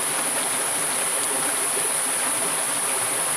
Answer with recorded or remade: recorded